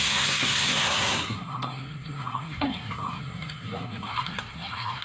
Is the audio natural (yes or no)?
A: no